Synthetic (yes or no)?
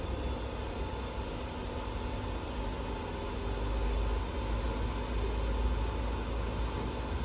no